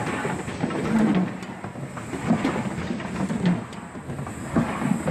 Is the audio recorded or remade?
recorded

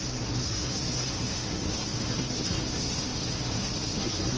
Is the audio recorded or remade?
remade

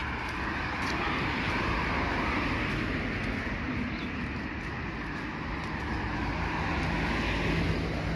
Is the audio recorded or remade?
recorded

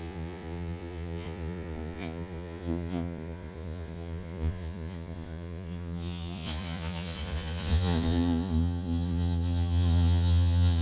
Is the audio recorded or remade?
remade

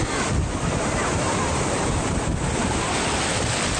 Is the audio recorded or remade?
recorded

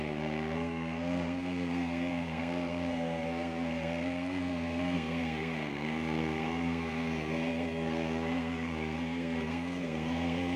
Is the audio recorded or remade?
remade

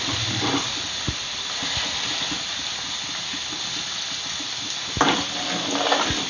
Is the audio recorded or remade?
recorded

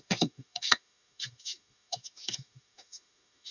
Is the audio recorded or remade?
remade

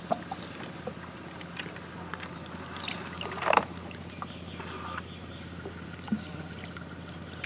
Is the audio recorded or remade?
recorded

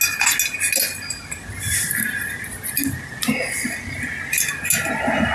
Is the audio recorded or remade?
recorded